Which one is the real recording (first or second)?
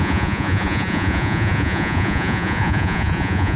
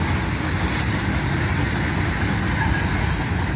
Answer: second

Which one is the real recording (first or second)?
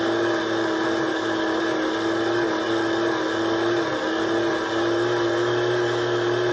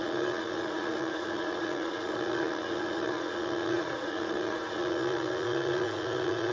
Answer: first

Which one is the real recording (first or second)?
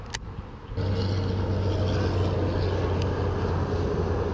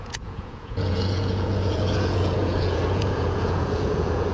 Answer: first